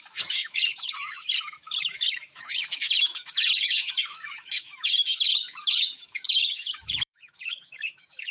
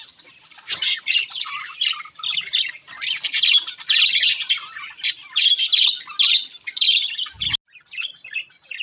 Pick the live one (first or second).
second